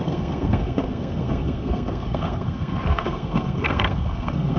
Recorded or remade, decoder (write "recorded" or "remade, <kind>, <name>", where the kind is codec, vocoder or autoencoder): remade, codec, SNAC